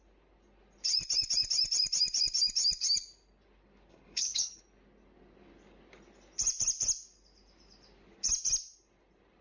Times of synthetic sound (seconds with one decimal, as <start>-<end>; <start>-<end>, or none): 3.9-4.6